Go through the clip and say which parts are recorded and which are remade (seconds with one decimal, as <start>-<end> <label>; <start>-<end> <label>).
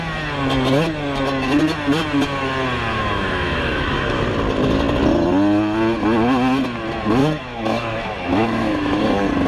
0.0-2.9 recorded; 2.9-4.2 remade; 4.2-7.2 recorded; 7.2-9.0 remade; 9.0-9.5 recorded